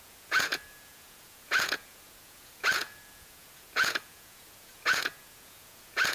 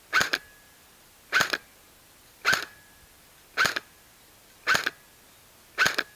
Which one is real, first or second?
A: second